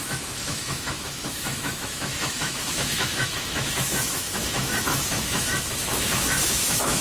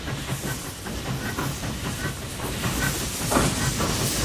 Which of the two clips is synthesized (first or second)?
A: first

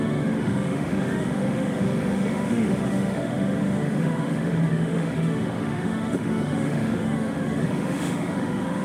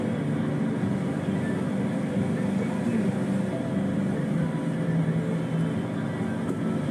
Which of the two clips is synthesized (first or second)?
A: first